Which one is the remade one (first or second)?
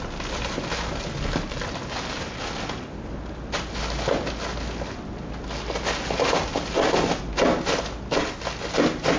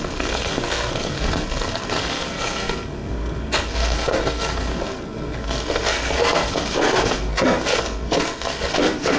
second